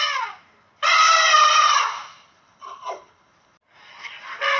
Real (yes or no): yes